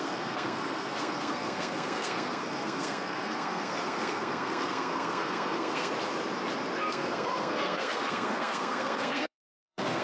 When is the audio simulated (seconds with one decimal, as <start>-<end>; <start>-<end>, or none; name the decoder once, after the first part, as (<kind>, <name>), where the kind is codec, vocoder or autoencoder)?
0.0-5.9 (codec, SNAC); 6.8-10.0